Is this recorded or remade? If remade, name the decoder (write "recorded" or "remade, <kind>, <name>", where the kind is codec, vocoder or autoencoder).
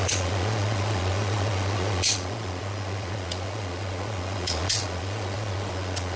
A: remade, vocoder, Vocos